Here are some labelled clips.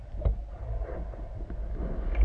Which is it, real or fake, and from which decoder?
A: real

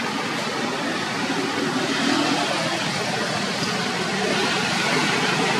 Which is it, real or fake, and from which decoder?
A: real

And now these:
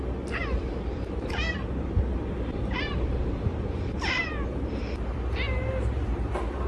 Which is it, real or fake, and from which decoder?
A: fake, vocoder, BigVGAN v2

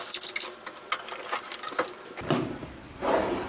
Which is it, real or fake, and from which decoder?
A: real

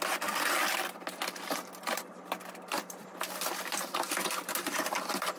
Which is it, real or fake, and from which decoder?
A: real